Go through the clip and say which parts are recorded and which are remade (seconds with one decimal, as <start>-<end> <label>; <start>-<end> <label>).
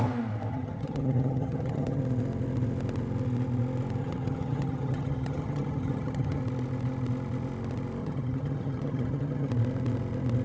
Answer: 0.0-0.5 recorded; 0.5-2.0 remade; 2.0-4.0 recorded; 4.0-6.4 remade; 6.4-8.0 recorded; 8.0-9.5 remade; 9.5-10.4 recorded